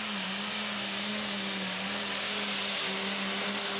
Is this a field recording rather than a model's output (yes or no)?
yes